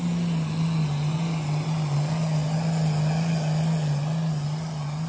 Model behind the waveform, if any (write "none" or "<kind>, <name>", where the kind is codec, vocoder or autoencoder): none